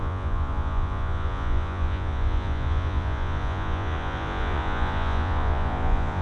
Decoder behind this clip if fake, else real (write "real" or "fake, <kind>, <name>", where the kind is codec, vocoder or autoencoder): fake, vocoder, Vocos